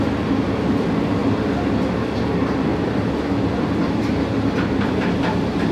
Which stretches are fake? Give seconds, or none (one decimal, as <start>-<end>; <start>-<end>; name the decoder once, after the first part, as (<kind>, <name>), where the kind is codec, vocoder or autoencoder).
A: 0.0-1.2 (vocoder, BigVGAN v2); 2.2-2.7; 4.5-5.7